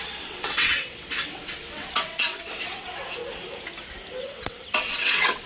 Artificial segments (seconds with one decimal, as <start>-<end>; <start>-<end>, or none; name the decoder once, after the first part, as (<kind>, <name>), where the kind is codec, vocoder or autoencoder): 0.0-3.2 (vocoder, WaveNeXt); 4.2-5.5